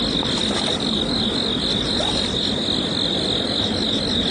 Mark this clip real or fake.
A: real